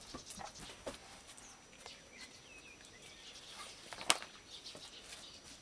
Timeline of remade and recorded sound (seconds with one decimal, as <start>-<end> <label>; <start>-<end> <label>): 0.0-5.6 recorded